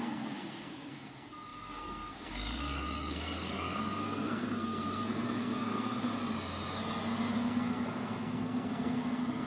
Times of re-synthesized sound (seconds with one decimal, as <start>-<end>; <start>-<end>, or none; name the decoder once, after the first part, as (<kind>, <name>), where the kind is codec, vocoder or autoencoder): 0.0-6.1 (codec, SNAC); 7.3-9.5